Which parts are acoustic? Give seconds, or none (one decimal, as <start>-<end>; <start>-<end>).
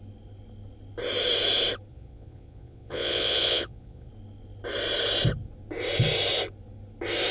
0.0-1.9; 4.1-7.3